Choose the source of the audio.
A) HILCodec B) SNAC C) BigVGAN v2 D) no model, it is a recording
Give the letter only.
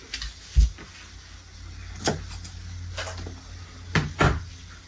D